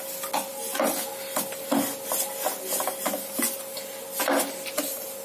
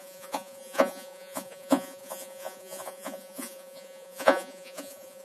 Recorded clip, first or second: first